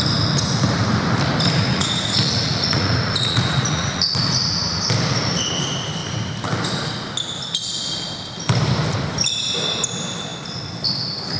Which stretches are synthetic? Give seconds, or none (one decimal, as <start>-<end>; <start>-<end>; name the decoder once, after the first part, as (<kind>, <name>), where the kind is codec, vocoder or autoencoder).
1.7-4.8 (vocoder, Vocos)